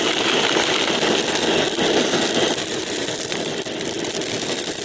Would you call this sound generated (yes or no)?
no